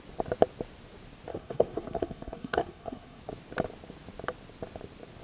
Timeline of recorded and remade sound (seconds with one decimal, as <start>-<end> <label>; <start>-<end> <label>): 0.0-1.3 recorded; 1.3-3.2 remade; 3.2-5.2 recorded